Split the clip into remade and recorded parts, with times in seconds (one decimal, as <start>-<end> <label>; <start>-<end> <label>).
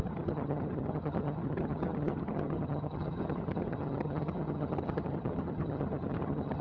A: 0.0-6.6 remade